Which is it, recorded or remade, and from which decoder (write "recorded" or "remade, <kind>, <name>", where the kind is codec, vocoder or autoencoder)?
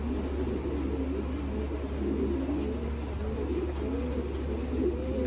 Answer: recorded